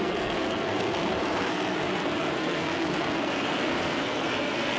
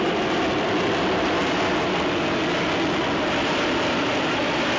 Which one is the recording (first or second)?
second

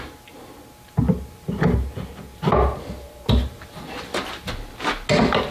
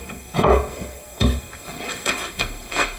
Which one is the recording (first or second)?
first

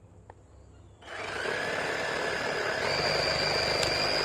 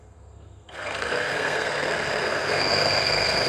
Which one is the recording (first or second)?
first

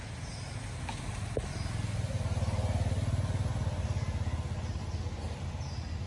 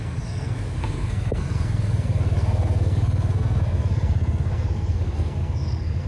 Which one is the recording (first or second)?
first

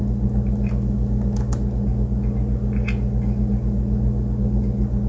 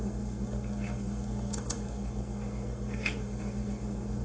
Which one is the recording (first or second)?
first